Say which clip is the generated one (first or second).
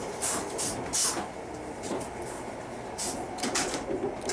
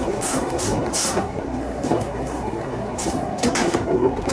second